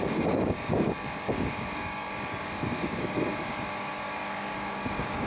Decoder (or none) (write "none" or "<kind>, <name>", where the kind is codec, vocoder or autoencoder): codec, DAC